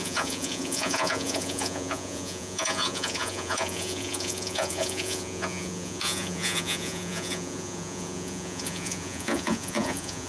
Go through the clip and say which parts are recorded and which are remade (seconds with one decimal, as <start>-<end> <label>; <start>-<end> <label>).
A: 0.0-10.3 remade